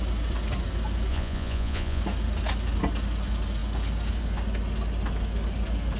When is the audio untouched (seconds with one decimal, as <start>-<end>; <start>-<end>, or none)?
0.0-1.1; 2.0-6.0